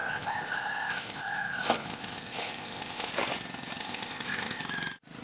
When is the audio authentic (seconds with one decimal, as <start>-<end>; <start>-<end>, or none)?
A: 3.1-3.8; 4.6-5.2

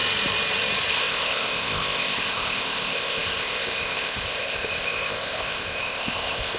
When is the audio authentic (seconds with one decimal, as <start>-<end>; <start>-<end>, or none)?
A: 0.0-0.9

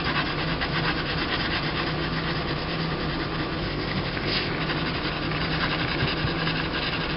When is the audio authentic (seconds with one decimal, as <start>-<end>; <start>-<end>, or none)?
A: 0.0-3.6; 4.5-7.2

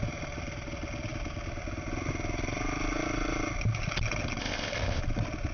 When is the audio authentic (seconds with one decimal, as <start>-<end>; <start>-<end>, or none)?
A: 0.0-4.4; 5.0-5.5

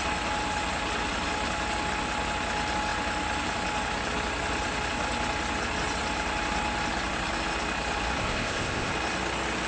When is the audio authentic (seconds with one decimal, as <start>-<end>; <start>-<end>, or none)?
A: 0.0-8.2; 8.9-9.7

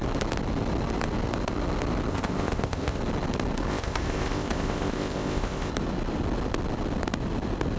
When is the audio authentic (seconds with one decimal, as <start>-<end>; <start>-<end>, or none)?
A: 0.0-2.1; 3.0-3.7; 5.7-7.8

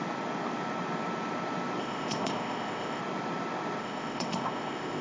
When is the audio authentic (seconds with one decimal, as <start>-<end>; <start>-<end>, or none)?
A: 0.0-1.8; 3.0-3.8

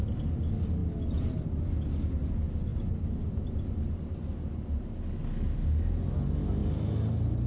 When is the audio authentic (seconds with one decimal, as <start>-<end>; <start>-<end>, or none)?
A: 0.0-7.5